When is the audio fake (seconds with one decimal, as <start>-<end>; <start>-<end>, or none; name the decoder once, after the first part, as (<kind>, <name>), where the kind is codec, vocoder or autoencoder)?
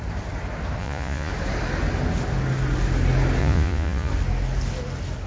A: 0.8-1.3 (vocoder, Vocos); 3.4-4.1